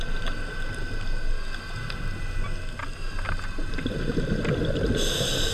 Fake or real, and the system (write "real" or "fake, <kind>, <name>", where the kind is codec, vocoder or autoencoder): real